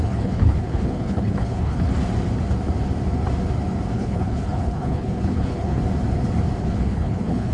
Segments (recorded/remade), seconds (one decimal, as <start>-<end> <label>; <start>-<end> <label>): 0.0-1.9 remade; 1.9-3.9 recorded; 3.9-5.8 remade; 5.8-6.6 recorded; 6.6-7.5 remade